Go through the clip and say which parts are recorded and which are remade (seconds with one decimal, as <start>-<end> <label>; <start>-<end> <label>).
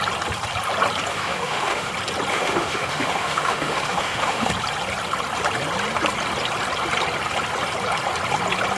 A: 0.0-1.1 recorded; 1.1-1.9 remade; 1.9-2.3 recorded; 2.3-4.5 remade; 4.5-8.8 recorded